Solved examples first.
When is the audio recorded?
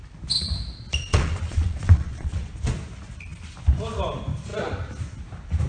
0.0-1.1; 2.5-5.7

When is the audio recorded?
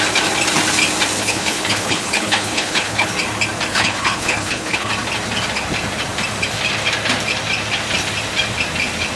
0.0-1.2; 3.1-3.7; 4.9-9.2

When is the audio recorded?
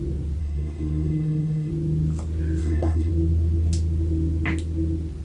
0.0-0.4; 1.7-2.6; 3.1-5.2